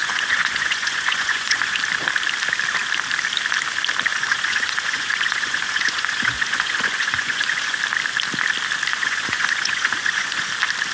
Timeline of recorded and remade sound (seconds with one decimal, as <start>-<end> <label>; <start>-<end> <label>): 0.0-1.8 remade; 1.8-4.1 recorded; 4.1-7.8 remade; 7.8-8.9 recorded; 8.9-10.5 remade; 10.5-10.9 recorded